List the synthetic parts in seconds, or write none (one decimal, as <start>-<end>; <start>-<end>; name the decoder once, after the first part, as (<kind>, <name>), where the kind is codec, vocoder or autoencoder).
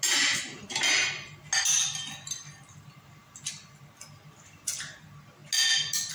none